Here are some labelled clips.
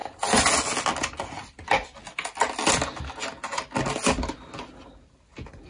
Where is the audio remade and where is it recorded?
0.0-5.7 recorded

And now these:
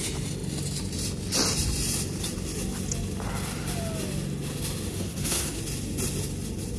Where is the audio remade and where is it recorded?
0.0-4.9 recorded; 4.9-5.6 remade; 5.6-6.8 recorded

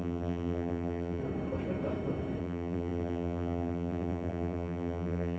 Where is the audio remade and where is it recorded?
0.0-1.2 remade; 1.2-2.4 recorded; 2.4-5.4 remade

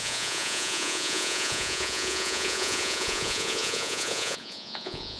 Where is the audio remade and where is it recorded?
0.0-5.2 remade

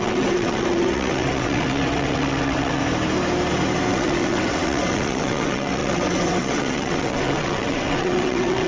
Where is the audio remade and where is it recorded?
0.0-2.8 remade; 2.8-3.9 recorded; 3.9-8.7 remade

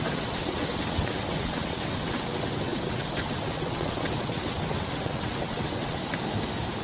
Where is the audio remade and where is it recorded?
0.0-6.0 remade; 6.0-6.8 recorded

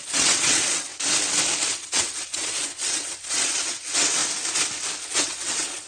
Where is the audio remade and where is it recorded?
0.0-0.9 remade; 0.9-1.7 recorded; 1.7-4.2 remade; 4.2-5.0 recorded; 5.0-5.9 remade

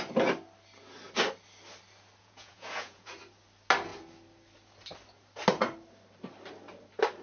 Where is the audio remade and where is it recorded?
0.0-2.2 recorded; 2.2-3.1 remade; 3.1-7.2 recorded